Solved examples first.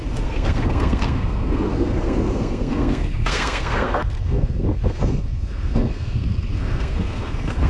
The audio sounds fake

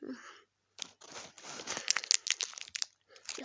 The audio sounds real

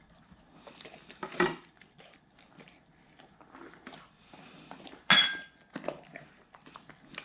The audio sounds real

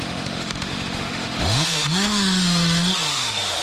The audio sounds fake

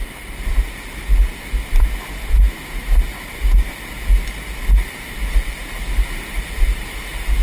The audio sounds real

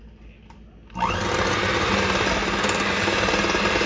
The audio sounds real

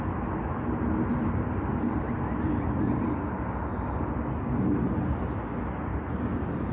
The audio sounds real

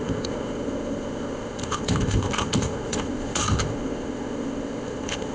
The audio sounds fake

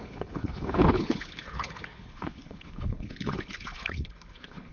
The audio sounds fake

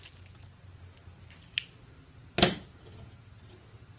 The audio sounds real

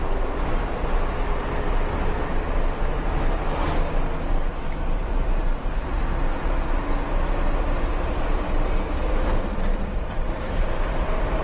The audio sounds real